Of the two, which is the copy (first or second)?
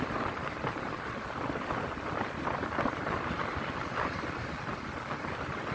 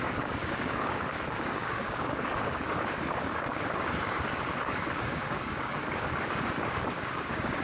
second